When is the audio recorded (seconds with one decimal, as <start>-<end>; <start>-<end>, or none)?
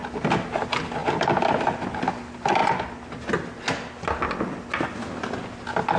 0.0-6.0